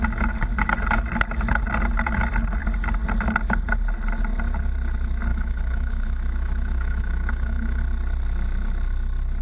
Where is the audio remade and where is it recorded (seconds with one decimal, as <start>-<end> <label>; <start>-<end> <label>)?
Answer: 0.0-5.3 recorded; 5.3-7.8 remade; 7.8-9.4 recorded